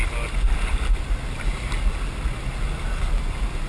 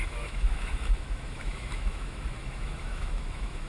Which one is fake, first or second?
second